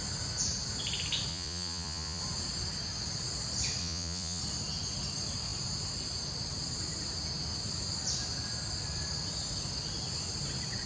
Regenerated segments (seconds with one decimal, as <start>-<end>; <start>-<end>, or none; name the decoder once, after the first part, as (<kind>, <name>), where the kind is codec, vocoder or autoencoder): 1.3-2.2 (vocoder, Vocos); 3.8-4.4